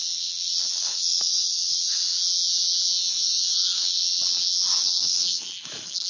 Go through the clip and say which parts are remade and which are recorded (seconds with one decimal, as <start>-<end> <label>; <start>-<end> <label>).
0.0-2.1 remade; 2.1-3.1 recorded; 3.1-4.0 remade; 4.0-4.7 recorded; 4.7-6.1 remade